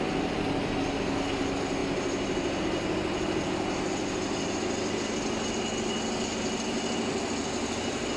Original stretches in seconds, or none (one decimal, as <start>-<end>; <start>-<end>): 0.0-8.2